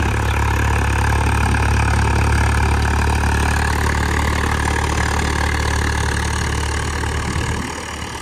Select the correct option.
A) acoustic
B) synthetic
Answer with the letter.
A